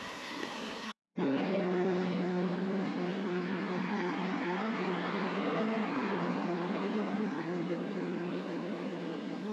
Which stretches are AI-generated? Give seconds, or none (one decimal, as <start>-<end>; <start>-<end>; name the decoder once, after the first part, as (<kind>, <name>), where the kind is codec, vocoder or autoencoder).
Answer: 0.0-9.5 (codec, SNAC)